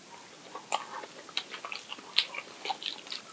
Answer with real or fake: real